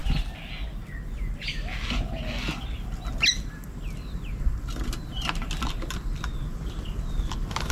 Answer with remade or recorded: recorded